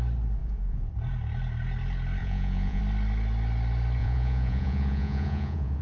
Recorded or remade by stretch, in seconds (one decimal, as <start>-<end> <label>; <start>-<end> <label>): 0.0-0.4 recorded; 0.4-0.9 remade; 0.9-2.2 recorded; 2.2-2.8 remade; 2.8-4.0 recorded; 4.0-5.8 remade